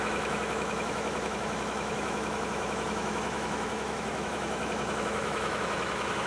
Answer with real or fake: fake